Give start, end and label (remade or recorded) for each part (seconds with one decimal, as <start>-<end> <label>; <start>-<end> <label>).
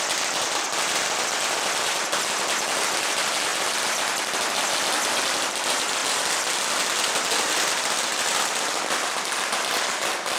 0.0-10.4 recorded